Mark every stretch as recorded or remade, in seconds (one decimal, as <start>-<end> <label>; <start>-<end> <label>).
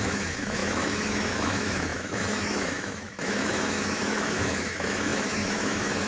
0.0-6.1 remade